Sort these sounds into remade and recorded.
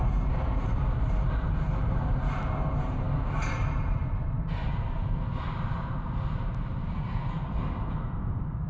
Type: remade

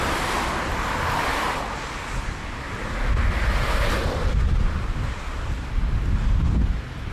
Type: recorded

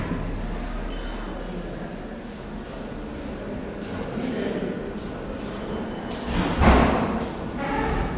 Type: recorded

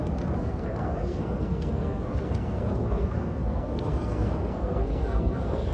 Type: remade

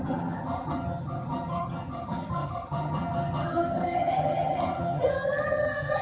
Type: remade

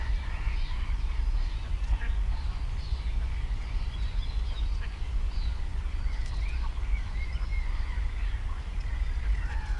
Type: remade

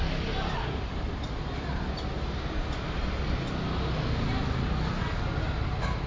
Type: recorded